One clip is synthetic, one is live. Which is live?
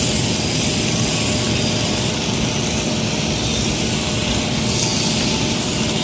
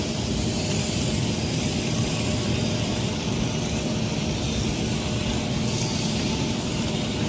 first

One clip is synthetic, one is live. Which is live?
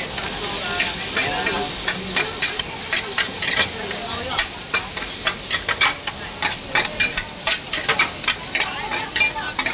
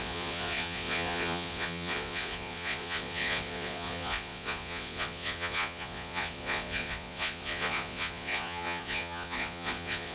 first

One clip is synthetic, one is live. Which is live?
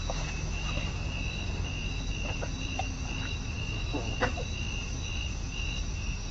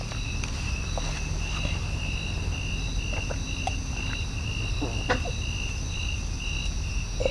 second